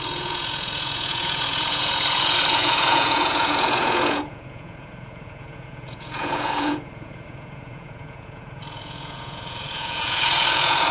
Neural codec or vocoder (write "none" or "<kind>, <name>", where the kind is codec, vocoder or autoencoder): vocoder, Vocos